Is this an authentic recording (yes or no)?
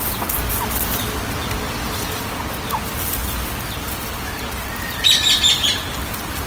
yes